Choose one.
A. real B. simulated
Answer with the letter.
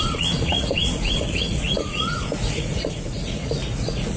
B